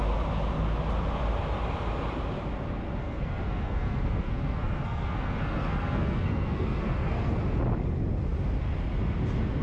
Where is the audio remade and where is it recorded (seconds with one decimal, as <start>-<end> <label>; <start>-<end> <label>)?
0.0-3.0 recorded; 3.0-7.4 remade; 7.4-9.6 recorded